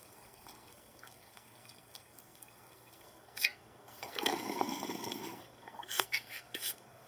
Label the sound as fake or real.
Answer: fake